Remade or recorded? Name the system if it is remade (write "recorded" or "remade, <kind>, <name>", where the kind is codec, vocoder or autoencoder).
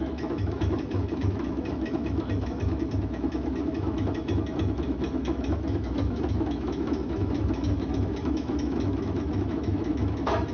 remade, autoencoder, DAC-VAE